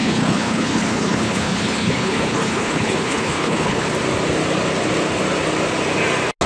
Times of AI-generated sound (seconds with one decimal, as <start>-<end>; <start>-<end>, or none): 0.0-3.9